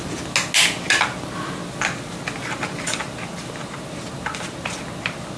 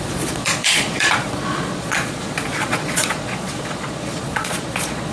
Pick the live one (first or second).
first